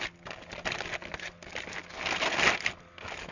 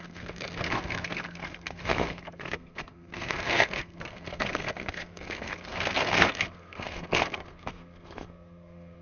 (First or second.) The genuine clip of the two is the first